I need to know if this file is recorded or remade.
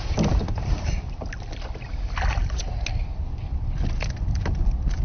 recorded